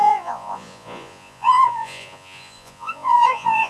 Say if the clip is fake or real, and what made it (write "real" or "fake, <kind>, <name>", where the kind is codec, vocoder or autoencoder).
fake, vocoder, Vocos